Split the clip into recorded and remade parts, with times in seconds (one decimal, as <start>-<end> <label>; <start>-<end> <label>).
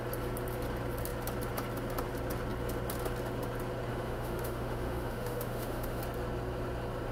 0.0-3.9 recorded; 3.9-6.0 remade; 6.0-7.1 recorded